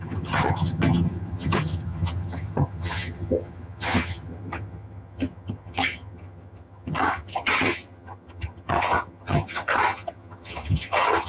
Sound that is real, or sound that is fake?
fake